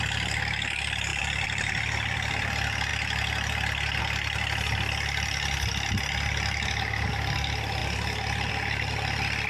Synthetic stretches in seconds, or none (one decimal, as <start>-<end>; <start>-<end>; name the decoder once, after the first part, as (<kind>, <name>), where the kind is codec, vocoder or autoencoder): 1.1-2.5 (vocoder, BigVGAN v2)